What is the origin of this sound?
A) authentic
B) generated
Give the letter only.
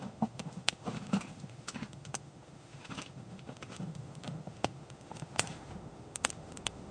B